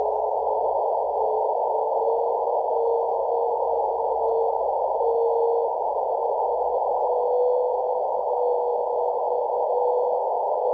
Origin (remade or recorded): recorded